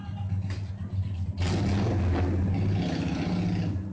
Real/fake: real